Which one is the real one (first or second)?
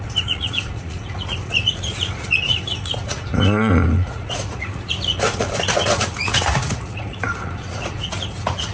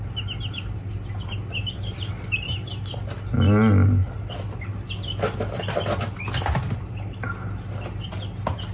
second